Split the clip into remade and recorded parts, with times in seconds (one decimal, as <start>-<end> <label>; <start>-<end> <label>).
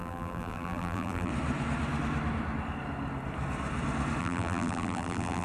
0.0-1.3 remade; 1.3-4.2 recorded; 4.2-5.4 remade